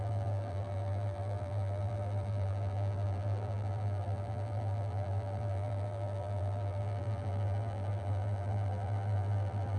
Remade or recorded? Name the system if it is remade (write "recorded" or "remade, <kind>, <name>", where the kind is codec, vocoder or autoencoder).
remade, vocoder, BigVGAN v2